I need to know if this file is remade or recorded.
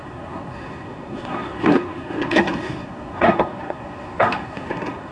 remade